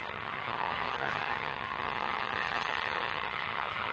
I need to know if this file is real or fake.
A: fake